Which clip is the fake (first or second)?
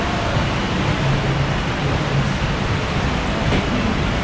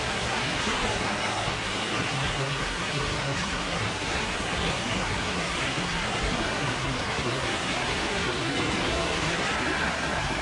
second